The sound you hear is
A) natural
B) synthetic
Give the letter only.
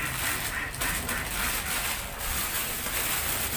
A